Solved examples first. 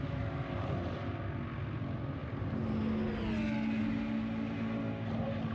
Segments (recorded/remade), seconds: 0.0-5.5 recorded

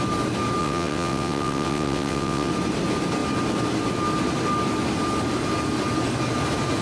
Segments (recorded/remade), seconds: 0.0-0.6 recorded; 0.6-2.5 remade; 2.5-6.8 recorded

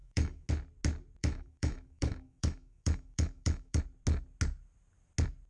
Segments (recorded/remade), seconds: 0.0-0.5 remade; 0.5-1.2 recorded; 1.2-3.8 remade; 3.8-5.5 recorded

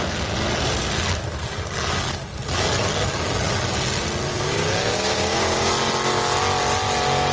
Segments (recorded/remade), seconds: 0.0-4.3 recorded; 4.3-5.7 remade; 5.7-7.3 recorded